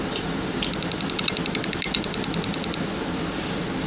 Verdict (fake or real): real